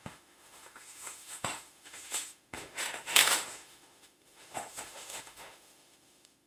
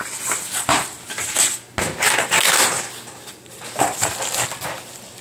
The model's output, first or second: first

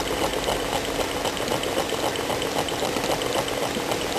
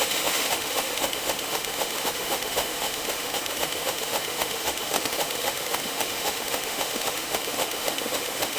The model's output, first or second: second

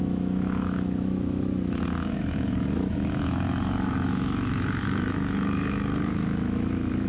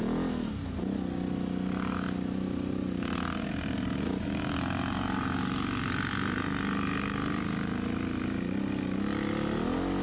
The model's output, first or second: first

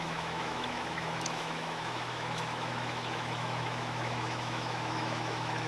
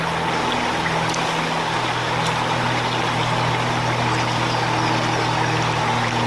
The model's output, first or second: first